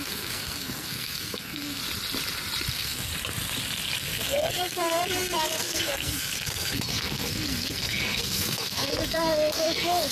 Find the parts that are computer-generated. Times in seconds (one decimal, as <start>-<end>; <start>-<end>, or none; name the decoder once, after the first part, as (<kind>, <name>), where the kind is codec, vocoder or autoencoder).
0.0-1.8 (codec, SNAC); 2.7-3.1; 4.0-10.1